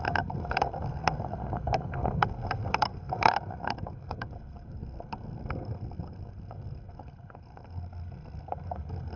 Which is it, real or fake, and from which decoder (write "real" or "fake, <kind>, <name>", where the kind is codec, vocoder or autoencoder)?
fake, codec, SNAC